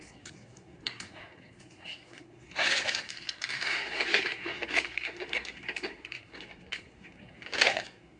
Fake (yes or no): yes